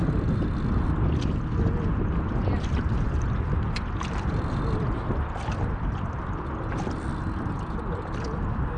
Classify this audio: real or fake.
real